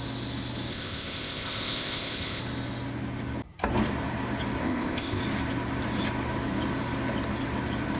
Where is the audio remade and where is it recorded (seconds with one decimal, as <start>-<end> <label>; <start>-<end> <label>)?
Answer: 0.0-0.7 recorded; 0.7-2.4 remade; 2.4-4.6 recorded; 4.6-5.2 remade; 5.2-8.0 recorded